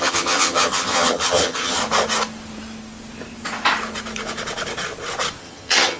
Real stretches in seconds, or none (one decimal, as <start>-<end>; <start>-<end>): 1.8-5.4